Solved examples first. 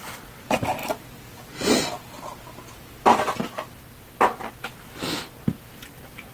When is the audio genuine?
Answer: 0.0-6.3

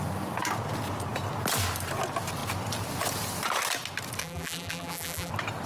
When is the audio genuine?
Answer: 0.0-4.2; 5.3-5.7